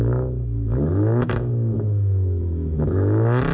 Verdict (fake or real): fake